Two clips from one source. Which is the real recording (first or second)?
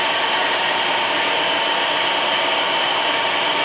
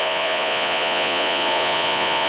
first